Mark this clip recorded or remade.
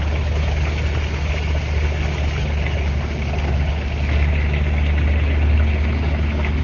recorded